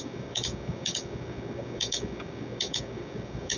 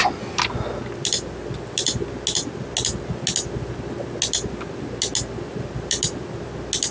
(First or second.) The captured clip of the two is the second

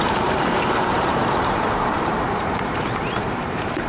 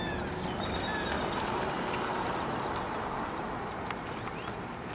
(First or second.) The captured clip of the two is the second